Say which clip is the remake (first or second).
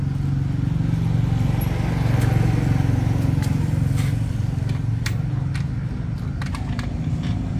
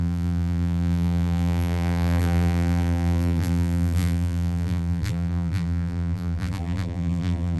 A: second